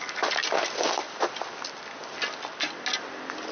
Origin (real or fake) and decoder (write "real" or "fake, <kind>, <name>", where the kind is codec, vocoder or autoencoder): real